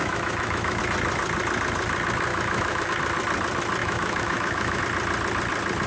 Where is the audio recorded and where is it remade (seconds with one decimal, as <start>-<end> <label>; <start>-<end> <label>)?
0.0-0.8 remade; 0.8-2.3 recorded; 2.3-2.9 remade; 2.9-3.8 recorded; 3.8-4.8 remade; 4.8-5.9 recorded